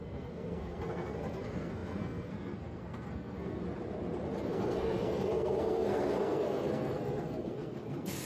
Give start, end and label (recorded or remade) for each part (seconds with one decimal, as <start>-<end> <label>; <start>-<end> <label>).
0.0-3.6 remade; 3.6-4.4 recorded; 4.4-8.3 remade